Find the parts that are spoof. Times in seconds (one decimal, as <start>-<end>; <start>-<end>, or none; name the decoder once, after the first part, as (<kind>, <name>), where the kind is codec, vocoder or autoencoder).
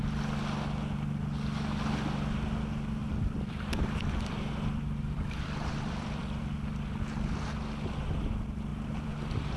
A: 3.0-6.4 (vocoder, BigVGAN v2); 8.7-9.6